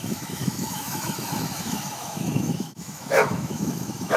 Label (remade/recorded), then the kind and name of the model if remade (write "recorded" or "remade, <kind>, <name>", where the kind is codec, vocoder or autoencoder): remade, autoencoder, DAC-VAE